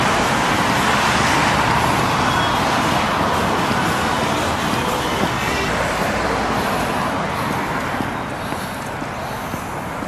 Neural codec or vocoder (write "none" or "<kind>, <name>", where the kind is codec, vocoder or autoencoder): none